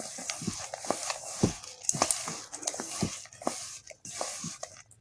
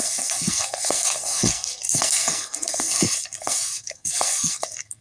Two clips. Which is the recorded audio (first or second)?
first